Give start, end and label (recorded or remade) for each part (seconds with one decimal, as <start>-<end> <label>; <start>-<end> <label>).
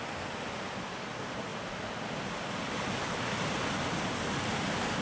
0.0-5.0 recorded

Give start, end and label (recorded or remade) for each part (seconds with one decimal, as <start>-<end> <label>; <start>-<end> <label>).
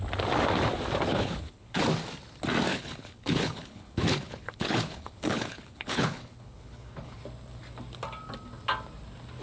0.0-1.1 recorded; 1.1-1.8 remade; 1.8-2.7 recorded; 2.7-7.2 remade; 7.2-9.4 recorded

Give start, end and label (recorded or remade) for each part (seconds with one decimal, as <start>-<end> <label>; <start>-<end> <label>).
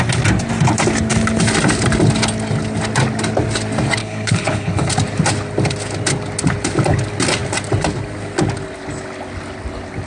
0.0-4.0 recorded; 4.0-4.9 remade; 4.9-10.1 recorded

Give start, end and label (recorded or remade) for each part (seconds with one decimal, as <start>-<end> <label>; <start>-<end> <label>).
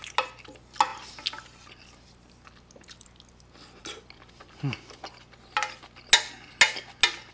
0.0-7.3 recorded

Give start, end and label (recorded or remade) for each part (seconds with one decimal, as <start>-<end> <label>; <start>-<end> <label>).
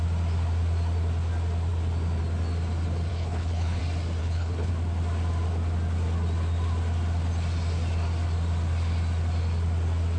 0.0-3.1 recorded; 3.1-3.8 remade; 3.8-4.2 recorded; 4.2-4.7 remade; 4.7-10.2 recorded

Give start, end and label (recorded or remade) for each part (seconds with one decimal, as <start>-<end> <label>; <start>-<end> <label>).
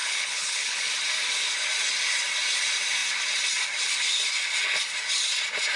0.0-0.9 remade; 0.9-5.8 recorded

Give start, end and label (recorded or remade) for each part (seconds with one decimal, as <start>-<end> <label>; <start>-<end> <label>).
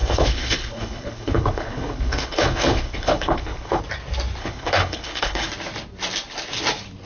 0.0-3.8 remade; 3.8-4.4 recorded; 4.4-5.5 remade; 5.5-7.1 recorded